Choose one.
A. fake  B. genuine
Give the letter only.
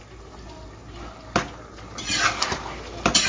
B